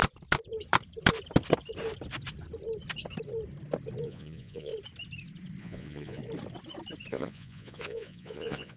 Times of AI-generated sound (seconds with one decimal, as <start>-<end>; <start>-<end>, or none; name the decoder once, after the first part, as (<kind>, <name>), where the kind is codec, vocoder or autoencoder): 4.0-4.7 (vocoder, Vocos); 5.6-6.2; 7.1-8.8